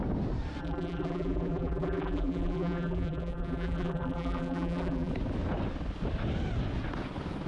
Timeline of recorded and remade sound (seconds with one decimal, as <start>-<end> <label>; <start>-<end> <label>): 0.0-0.6 recorded; 0.6-5.1 remade; 5.1-7.5 recorded